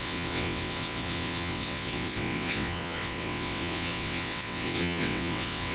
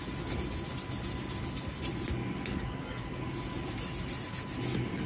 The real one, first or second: second